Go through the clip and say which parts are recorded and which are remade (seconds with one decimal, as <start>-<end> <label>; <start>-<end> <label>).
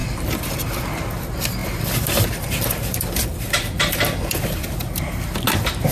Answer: 0.0-0.8 remade; 0.8-1.6 recorded; 1.6-5.1 remade; 5.1-5.9 recorded